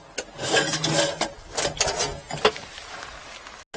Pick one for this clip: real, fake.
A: real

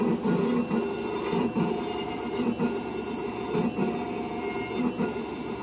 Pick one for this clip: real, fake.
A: real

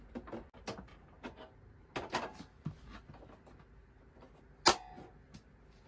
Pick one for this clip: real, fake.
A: real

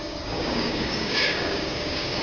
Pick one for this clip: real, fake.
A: fake